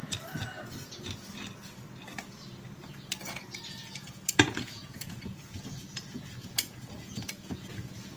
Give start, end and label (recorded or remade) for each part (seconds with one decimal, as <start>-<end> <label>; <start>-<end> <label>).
0.0-2.8 recorded; 2.8-8.2 remade